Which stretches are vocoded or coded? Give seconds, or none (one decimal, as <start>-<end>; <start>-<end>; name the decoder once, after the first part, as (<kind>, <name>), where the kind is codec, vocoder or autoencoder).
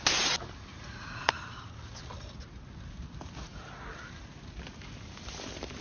0.7-1.4 (vocoder, Vocos)